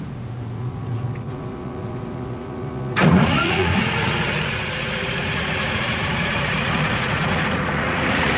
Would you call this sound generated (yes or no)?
yes